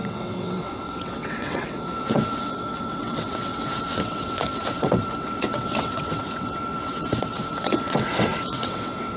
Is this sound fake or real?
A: fake